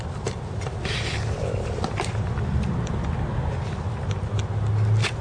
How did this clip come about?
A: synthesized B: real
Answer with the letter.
B